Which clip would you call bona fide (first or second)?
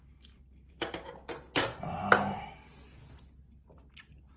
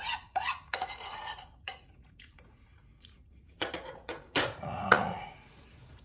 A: first